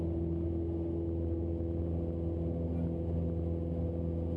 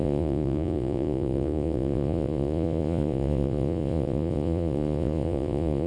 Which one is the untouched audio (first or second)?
first